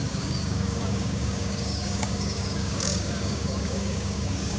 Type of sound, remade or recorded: remade